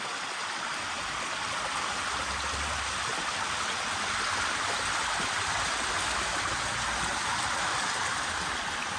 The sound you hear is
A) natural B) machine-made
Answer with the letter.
A